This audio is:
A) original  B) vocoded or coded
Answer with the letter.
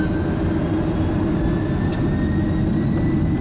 A